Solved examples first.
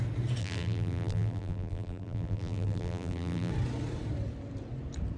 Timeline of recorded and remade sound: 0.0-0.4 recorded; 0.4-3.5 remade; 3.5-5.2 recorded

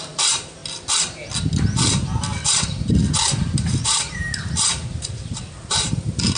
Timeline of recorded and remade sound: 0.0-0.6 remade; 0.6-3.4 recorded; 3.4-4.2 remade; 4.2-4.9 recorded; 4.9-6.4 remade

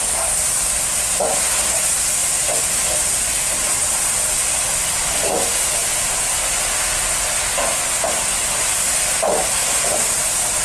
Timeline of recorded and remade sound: 0.0-2.2 recorded; 2.2-4.4 remade; 4.4-5.8 recorded; 5.8-6.6 remade; 6.6-10.6 recorded